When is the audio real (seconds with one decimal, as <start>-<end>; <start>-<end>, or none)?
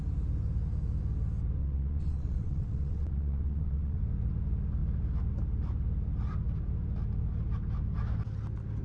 0.0-1.6; 4.0-8.8